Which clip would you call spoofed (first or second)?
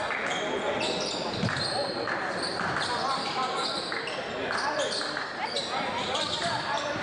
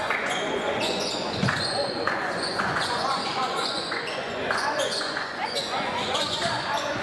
second